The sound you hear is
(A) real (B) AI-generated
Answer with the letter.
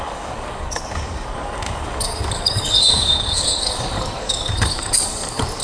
B